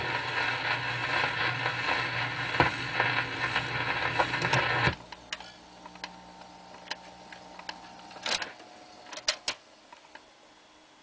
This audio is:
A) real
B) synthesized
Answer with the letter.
A